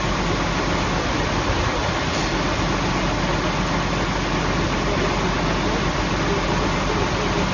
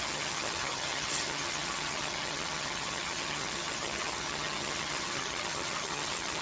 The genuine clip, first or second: first